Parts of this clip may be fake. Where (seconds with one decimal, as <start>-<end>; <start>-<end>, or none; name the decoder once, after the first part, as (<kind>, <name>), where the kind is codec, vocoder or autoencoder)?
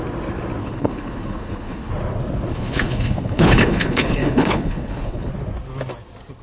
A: 0.6-1.9 (codec, HILCodec); 2.5-5.3